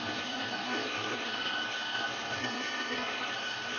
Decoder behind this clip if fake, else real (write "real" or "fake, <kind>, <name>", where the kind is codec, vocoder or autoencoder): fake, codec, SNAC